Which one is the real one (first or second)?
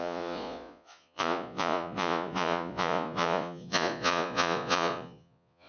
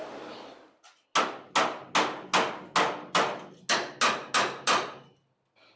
second